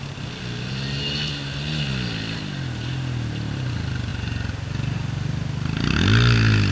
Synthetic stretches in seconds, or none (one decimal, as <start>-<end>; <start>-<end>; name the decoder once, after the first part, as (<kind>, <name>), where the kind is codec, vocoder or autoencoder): none